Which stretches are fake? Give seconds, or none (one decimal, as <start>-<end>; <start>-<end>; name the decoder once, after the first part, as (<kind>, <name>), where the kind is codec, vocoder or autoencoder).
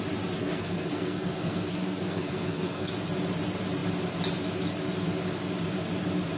0.4-2.9 (codec, SNAC)